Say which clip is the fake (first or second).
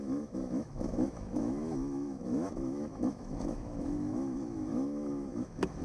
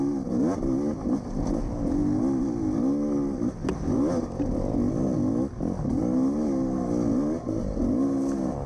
first